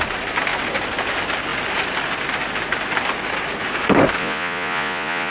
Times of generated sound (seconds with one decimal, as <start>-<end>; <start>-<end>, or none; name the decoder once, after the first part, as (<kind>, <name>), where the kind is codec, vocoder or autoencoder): 4.2-5.3 (vocoder, Vocos)